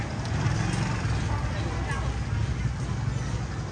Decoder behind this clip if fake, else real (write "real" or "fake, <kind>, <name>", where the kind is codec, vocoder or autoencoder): real